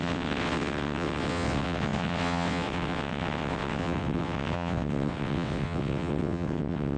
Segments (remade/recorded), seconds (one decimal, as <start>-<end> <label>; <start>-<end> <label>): 0.0-7.0 remade